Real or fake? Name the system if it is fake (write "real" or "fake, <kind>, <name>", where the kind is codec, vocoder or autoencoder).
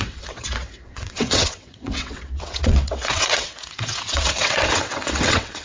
fake, vocoder, WaveNeXt